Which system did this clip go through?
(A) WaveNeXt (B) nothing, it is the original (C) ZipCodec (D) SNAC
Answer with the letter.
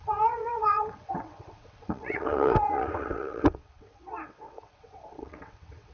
A